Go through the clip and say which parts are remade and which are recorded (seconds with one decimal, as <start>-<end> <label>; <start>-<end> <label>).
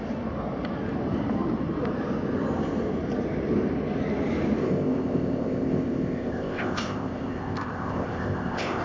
0.0-4.6 recorded; 4.6-8.8 remade